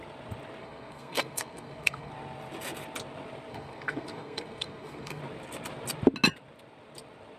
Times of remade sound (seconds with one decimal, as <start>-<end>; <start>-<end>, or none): 0.6-2.1; 3.5-5.2